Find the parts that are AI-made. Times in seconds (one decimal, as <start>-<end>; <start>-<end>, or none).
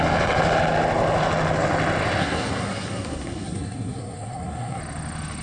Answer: 2.2-4.8